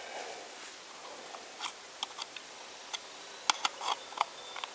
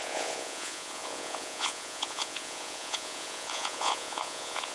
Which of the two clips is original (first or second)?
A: first